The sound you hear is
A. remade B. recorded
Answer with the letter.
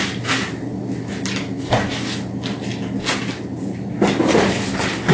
B